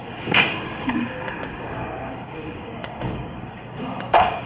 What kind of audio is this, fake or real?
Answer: fake